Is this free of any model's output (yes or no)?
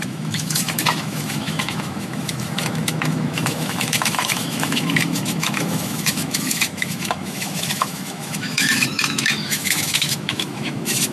no